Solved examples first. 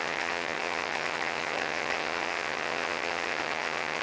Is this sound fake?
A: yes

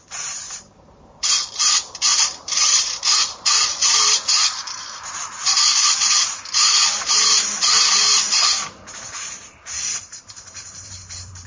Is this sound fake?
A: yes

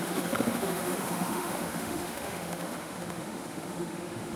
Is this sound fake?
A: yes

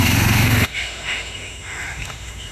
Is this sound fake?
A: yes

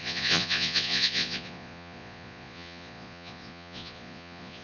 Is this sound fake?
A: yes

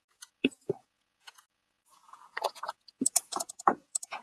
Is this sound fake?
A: yes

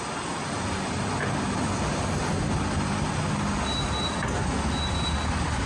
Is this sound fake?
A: no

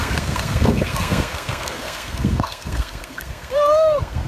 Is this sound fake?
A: yes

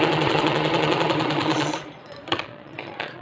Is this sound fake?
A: yes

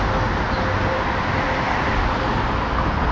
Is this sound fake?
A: no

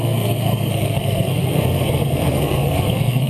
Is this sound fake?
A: yes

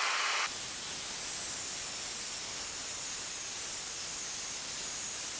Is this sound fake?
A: no